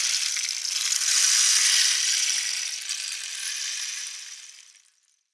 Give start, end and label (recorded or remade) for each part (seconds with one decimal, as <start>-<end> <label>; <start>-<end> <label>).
0.0-5.3 recorded